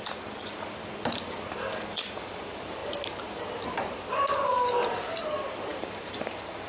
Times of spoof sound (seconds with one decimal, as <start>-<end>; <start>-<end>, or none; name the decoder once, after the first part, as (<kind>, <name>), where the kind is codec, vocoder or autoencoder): 0.0-2.8 (vocoder, BigVGAN v2); 4.1-6.7

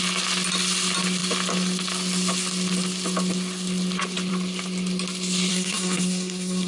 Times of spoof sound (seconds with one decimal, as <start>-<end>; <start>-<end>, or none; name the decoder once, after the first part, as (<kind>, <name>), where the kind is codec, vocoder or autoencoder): 5.5-6.7 (codec, SNAC)

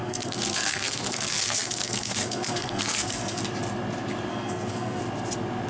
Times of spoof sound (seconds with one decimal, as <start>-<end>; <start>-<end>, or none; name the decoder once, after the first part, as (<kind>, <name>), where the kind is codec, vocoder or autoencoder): 0.0-3.4 (codec, SNAC); 4.3-5.0